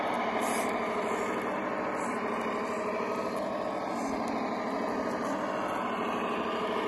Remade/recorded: recorded